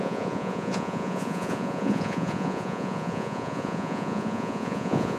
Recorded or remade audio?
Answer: remade